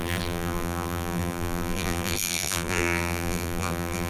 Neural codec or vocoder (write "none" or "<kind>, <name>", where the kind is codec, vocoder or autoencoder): vocoder, BigVGAN v2